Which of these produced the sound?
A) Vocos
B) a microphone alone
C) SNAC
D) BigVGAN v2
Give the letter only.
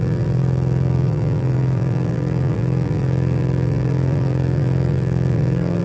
D